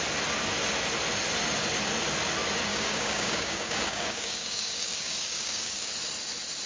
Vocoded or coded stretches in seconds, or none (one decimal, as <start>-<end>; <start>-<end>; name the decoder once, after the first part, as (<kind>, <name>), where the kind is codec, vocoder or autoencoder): 2.7-5.9 (codec, DAC)

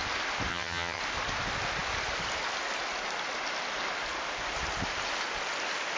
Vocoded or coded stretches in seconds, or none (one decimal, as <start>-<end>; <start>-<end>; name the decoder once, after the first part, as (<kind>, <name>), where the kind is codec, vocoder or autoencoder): 0.5-1.0 (vocoder, HiFi-GAN)

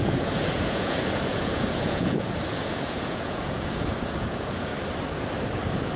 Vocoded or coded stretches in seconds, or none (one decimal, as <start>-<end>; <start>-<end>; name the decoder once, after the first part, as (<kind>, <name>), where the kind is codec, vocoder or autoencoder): 0.0-4.7 (vocoder, Vocos)

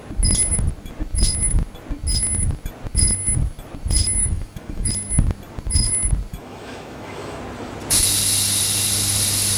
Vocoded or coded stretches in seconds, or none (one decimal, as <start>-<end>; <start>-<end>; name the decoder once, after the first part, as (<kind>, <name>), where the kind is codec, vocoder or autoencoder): 4.2-4.9 (autoencoder, DAC-VAE); 6.4-7.4

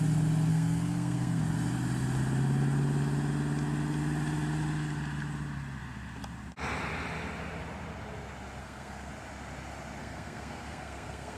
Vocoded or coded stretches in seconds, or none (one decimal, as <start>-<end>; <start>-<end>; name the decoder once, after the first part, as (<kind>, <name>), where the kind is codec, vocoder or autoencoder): 0.5-1.4 (codec, SNAC); 8.6-9.1; 10.0-11.4

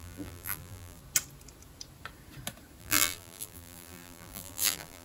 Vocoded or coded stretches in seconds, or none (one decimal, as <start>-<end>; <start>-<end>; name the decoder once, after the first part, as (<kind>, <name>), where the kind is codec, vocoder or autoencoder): 0.0-1.0 (vocoder, BigVGAN v2); 2.8-5.0